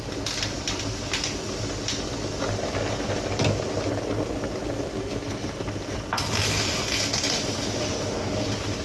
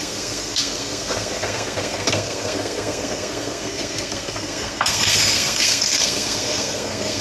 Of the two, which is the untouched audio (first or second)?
first